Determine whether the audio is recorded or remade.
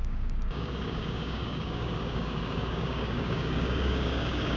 remade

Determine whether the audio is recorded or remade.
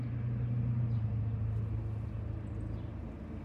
recorded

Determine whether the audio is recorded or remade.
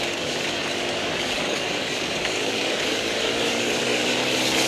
remade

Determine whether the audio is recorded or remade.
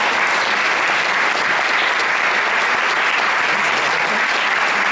recorded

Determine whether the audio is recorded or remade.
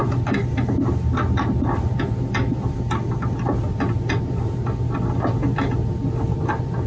recorded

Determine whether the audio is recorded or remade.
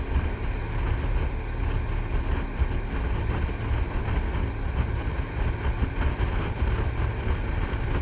recorded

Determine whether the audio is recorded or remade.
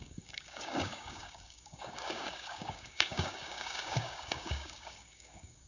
remade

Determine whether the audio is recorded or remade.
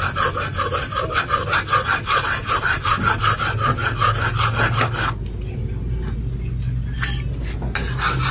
recorded